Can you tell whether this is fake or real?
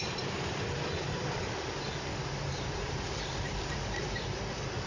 fake